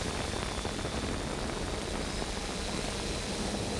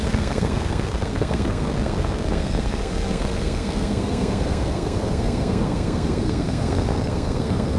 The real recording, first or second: first